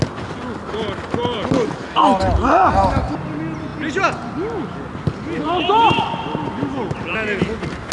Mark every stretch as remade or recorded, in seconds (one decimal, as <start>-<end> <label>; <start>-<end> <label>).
0.0-7.9 recorded